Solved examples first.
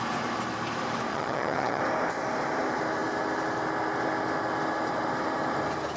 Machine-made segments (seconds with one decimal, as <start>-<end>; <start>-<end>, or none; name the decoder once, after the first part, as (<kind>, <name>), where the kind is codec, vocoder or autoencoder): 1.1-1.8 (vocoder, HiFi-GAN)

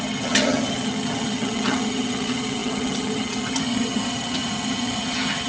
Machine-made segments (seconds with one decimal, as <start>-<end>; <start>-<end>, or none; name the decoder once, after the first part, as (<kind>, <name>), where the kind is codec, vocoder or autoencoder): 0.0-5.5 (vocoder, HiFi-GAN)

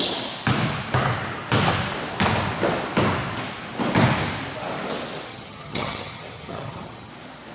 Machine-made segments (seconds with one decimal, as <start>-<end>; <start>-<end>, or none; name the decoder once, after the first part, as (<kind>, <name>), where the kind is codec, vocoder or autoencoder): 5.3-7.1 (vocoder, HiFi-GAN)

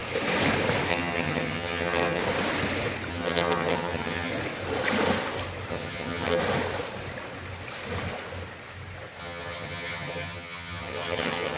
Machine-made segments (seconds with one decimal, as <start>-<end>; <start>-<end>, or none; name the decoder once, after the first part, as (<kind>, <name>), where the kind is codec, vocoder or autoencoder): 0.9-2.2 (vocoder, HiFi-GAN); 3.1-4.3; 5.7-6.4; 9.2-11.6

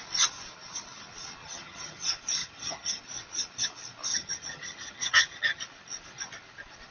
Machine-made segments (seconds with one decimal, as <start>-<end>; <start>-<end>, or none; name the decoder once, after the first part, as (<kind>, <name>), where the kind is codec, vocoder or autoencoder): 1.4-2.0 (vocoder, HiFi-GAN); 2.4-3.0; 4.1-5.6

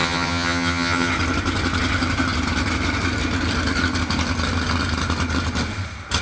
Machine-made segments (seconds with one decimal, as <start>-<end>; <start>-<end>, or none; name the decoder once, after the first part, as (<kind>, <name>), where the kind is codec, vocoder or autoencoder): 0.0-1.1 (vocoder, HiFi-GAN)